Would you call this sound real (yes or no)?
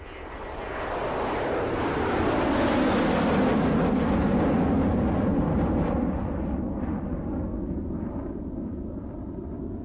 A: yes